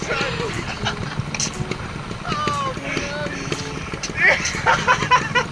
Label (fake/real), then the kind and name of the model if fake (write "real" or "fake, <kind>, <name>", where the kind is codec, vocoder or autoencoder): real